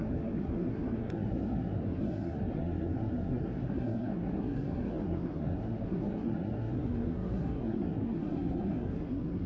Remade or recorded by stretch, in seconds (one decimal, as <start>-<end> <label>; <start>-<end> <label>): 0.0-9.5 remade